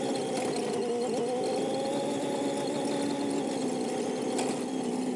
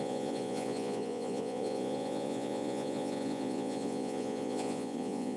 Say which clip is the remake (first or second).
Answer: second